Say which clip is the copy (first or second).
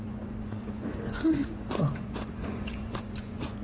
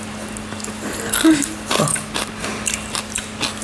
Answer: first